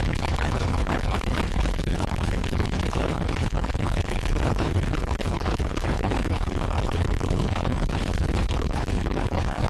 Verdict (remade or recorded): remade